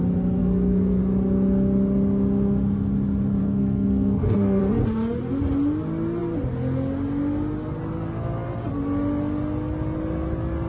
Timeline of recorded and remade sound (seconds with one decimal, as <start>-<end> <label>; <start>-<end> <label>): 0.0-0.4 recorded; 0.4-1.0 remade; 1.0-3.4 recorded; 3.4-4.6 remade; 4.6-10.7 recorded